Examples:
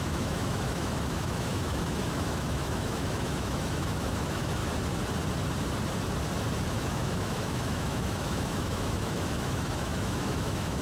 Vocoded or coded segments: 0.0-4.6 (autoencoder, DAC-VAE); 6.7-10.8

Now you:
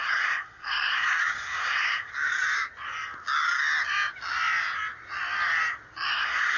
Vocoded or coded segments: 0.0-2.1 (codec, SNAC); 6.1-6.6

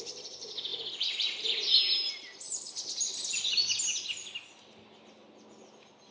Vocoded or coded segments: none